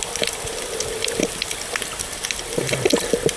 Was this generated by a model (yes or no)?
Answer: no